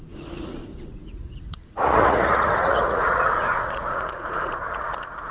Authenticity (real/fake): fake